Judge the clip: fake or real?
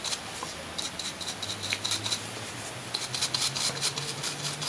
real